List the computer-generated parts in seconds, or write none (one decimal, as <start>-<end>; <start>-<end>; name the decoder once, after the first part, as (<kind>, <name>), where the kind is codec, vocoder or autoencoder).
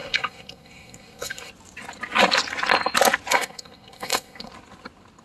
0.0-1.5 (codec, SNAC); 3.3-4.5